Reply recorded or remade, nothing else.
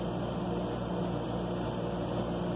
recorded